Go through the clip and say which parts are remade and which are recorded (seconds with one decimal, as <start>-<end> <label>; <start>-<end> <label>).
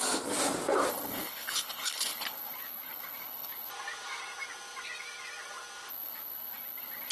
0.0-0.9 recorded; 0.9-3.7 remade; 3.7-5.9 recorded; 5.9-7.1 remade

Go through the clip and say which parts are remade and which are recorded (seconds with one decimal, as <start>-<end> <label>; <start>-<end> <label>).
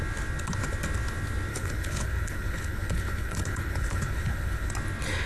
0.0-1.5 recorded; 1.5-4.7 remade; 4.7-5.3 recorded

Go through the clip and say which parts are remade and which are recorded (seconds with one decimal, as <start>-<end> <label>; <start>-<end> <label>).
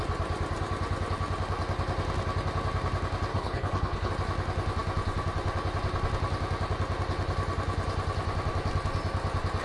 0.0-3.3 recorded; 3.3-4.1 remade; 4.1-9.6 recorded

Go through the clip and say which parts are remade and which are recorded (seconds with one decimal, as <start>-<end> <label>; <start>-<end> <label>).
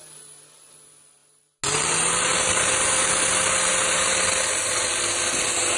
0.0-5.8 recorded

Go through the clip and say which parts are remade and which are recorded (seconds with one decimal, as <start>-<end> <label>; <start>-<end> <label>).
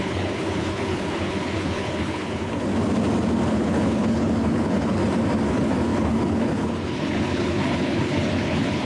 0.0-2.7 remade; 2.7-3.5 recorded; 3.5-5.0 remade; 5.0-5.5 recorded; 5.5-8.8 remade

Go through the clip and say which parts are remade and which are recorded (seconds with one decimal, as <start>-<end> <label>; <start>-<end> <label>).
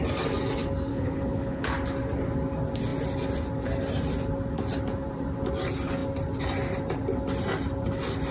0.0-0.9 recorded; 0.9-1.7 remade; 1.7-8.3 recorded